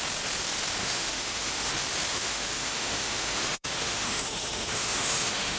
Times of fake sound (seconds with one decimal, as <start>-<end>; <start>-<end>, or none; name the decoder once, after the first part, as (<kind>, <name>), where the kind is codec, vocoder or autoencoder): 0.8-1.7 (autoencoder, DAC-VAE); 2.1-5.6